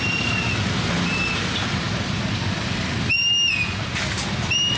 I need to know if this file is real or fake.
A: real